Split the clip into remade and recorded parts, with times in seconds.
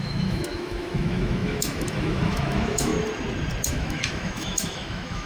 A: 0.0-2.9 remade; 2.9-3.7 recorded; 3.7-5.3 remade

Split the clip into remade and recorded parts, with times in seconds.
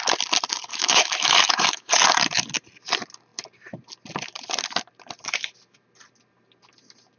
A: 0.0-0.7 recorded; 0.7-1.9 remade; 1.9-7.2 recorded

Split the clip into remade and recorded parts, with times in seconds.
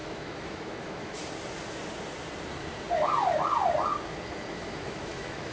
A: 0.0-1.2 remade; 1.2-4.5 recorded; 4.5-5.5 remade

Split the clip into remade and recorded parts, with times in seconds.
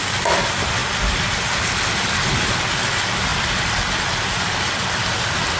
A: 0.0-5.6 recorded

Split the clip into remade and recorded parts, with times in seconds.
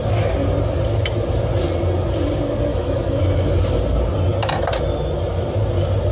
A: 0.0-2.7 recorded; 2.7-3.2 remade; 3.2-6.1 recorded